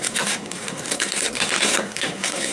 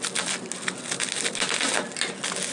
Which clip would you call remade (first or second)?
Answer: first